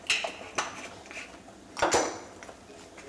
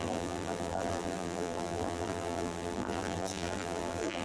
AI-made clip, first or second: second